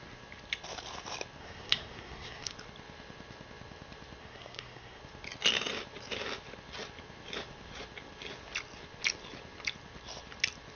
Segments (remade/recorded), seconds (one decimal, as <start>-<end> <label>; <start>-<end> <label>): 0.0-1.4 recorded; 1.4-2.5 remade; 2.5-4.2 recorded; 4.2-5.0 remade; 5.0-10.8 recorded